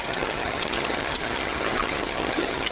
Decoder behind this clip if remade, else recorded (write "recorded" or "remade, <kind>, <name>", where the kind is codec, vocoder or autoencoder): remade, vocoder, HiFi-GAN